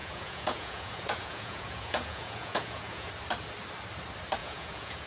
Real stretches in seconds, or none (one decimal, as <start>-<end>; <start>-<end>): 3.1-4.4